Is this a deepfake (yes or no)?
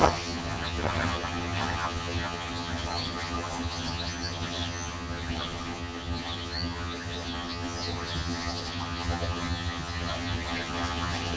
yes